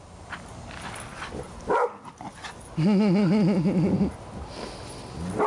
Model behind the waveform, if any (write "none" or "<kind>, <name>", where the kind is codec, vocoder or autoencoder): none